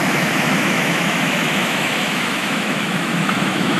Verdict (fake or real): fake